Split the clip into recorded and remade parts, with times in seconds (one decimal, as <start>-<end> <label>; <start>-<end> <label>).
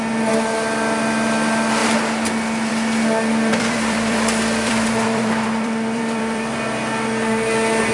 0.0-3.5 recorded; 3.5-6.6 remade; 6.6-7.9 recorded